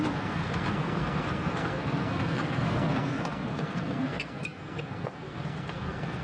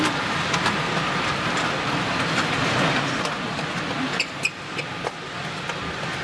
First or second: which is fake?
first